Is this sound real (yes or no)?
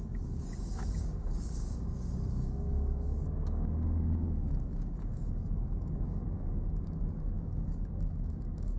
no